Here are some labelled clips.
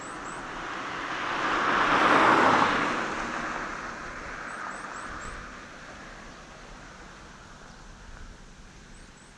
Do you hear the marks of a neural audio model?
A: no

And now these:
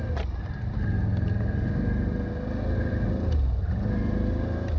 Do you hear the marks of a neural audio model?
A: no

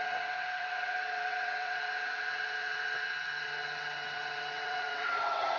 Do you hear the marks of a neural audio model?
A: yes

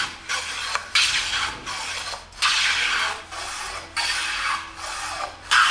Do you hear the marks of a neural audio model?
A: no